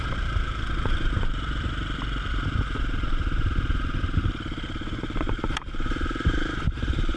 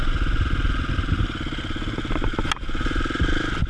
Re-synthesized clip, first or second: first